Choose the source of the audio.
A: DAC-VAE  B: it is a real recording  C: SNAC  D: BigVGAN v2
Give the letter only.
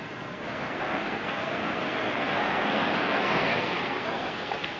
C